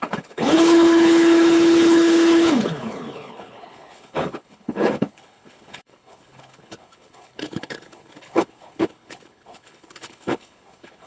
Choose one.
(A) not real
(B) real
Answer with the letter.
A